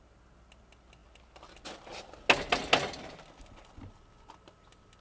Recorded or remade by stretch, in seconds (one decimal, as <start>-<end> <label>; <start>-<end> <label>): 0.0-5.0 recorded